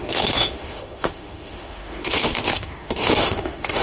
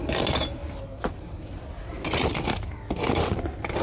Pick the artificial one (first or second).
first